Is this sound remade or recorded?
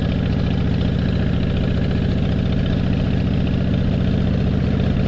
recorded